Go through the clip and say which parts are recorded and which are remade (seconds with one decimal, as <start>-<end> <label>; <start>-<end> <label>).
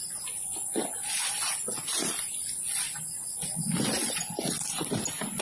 0.0-5.4 recorded